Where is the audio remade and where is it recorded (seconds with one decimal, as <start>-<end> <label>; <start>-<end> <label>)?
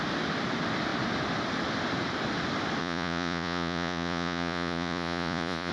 0.0-2.8 recorded; 2.8-5.7 remade